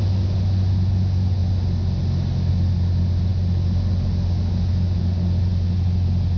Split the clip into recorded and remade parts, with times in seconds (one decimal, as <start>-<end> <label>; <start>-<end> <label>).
0.0-6.4 recorded